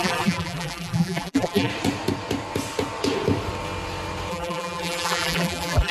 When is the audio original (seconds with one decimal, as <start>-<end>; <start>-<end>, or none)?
1.7-4.3